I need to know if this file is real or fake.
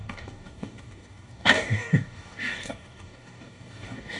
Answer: fake